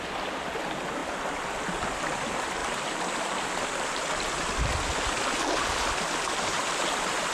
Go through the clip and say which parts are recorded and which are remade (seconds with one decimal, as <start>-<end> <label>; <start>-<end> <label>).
0.0-7.3 recorded